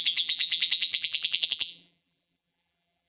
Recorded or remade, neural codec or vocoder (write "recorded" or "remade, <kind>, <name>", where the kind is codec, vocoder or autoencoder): remade, vocoder, BigVGAN v2